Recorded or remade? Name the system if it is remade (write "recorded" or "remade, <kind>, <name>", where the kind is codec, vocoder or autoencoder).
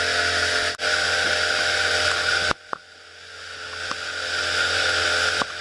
recorded